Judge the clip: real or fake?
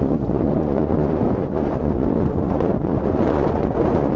fake